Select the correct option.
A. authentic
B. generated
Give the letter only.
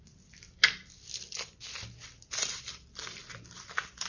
B